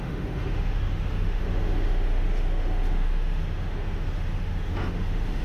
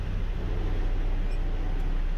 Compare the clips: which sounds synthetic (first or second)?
first